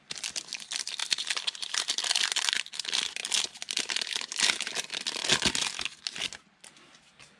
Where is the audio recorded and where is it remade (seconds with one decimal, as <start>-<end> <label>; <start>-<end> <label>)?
0.0-1.0 recorded; 1.0-2.6 remade; 2.6-3.2 recorded; 3.2-3.8 remade; 3.8-7.4 recorded

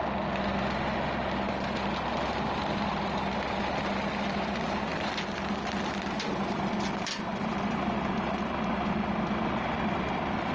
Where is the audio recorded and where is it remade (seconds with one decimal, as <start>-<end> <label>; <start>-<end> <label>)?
0.0-10.5 recorded

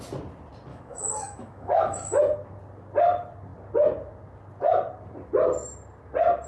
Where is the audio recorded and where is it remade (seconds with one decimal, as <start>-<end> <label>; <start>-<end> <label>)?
0.0-0.7 recorded; 0.7-2.2 remade; 2.2-6.5 recorded

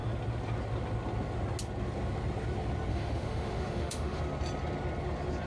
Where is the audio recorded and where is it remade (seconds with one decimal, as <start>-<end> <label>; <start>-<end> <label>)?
0.0-2.9 recorded; 2.9-4.2 remade; 4.2-5.5 recorded